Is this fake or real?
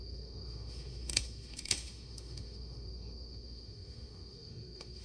fake